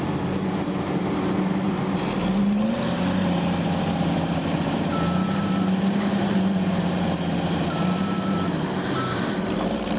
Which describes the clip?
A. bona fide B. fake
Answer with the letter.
B